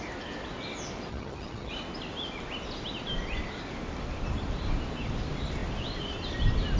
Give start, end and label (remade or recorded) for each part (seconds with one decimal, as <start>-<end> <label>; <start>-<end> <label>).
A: 0.0-1.1 recorded; 1.1-1.7 remade; 1.7-6.8 recorded